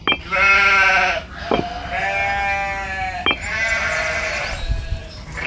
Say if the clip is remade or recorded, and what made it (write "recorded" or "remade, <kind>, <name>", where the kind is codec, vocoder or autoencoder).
recorded